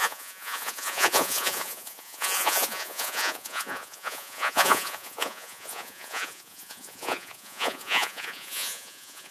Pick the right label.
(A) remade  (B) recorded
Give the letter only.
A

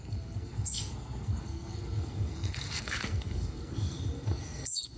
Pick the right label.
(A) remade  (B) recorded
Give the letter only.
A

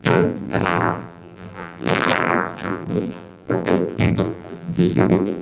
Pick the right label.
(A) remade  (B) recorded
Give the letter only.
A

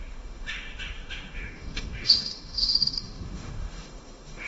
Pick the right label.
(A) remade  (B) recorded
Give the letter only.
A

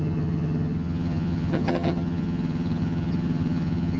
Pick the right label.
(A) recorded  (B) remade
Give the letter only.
B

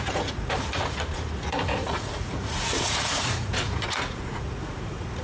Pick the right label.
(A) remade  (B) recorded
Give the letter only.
A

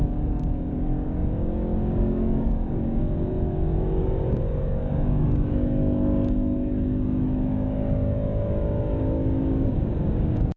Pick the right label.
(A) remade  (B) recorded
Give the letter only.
A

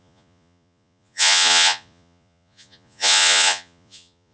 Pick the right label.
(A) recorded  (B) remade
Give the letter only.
B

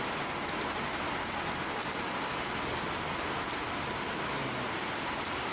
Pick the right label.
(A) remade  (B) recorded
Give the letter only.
B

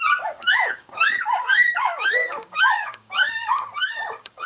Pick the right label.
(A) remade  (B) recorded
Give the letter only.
A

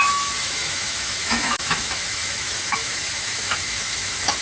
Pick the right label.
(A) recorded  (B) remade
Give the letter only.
B